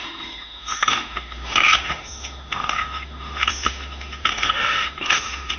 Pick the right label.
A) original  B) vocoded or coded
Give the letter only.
B